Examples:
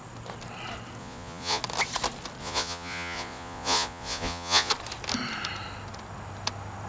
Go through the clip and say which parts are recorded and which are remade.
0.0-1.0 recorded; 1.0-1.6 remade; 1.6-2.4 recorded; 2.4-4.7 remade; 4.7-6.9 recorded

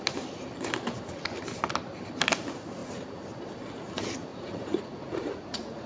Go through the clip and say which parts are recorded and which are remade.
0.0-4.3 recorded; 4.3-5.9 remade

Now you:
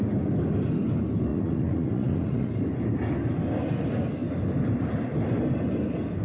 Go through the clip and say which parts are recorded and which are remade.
0.0-1.3 recorded; 1.3-2.5 remade; 2.5-6.2 recorded

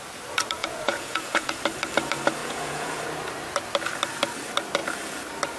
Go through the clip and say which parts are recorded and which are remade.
0.0-0.6 recorded; 0.6-1.6 remade; 1.6-2.4 recorded; 2.4-3.0 remade; 3.0-5.6 recorded